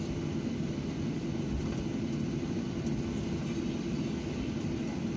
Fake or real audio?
real